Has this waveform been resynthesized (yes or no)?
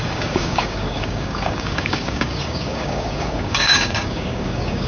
yes